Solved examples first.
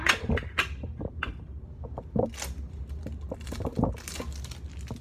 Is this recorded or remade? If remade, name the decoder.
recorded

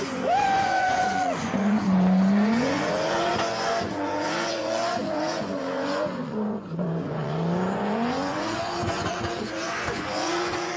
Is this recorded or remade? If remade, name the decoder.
remade, vocoder, Vocos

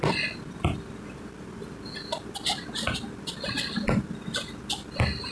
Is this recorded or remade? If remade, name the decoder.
recorded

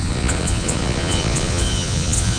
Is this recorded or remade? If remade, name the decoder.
remade, vocoder, Vocos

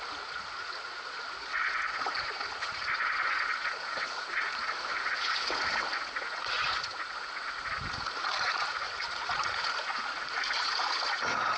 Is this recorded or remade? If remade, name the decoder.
remade, vocoder, Vocos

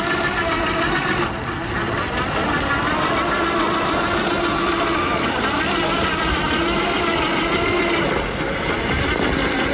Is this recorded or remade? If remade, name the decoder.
recorded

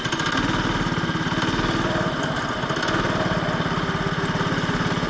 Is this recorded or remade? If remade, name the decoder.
recorded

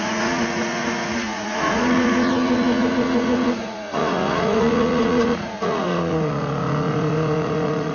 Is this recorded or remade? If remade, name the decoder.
remade, vocoder, Vocos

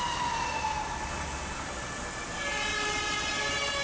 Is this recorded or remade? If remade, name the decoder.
recorded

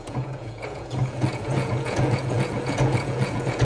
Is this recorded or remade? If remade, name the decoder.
remade, vocoder, Vocos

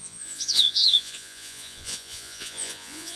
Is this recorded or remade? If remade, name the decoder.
remade, vocoder, Vocos